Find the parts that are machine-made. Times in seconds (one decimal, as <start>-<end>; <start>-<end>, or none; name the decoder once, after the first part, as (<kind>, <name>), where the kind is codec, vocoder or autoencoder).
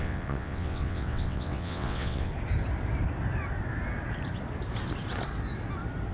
0.0-2.3 (vocoder, WaveNeXt)